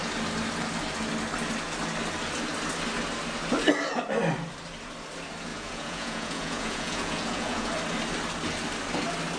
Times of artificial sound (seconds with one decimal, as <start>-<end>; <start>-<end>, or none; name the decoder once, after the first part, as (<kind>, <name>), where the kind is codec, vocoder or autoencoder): 5.5-7.7 (vocoder, Vocos)